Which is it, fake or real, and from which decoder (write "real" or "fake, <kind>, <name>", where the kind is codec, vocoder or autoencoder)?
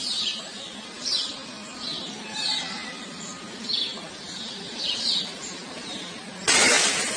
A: real